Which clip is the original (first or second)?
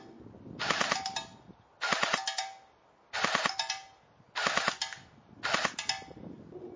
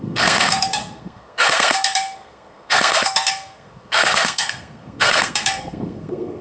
first